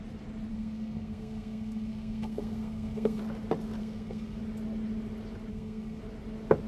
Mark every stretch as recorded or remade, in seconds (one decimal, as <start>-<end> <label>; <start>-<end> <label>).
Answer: 0.0-0.5 recorded; 0.5-3.2 remade; 3.2-3.8 recorded; 3.8-4.4 remade; 4.4-5.5 recorded; 5.5-6.0 remade; 6.0-6.7 recorded